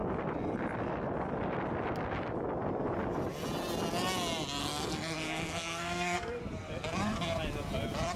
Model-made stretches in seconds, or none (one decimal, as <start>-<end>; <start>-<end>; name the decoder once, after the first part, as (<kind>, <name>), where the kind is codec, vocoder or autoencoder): 4.6-6.4 (codec, SNAC)